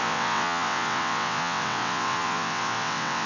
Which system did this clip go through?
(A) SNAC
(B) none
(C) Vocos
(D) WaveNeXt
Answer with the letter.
D